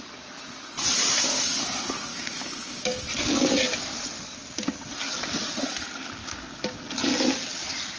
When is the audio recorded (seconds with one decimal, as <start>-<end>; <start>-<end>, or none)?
0.0-2.1; 3.0-6.2; 6.8-8.0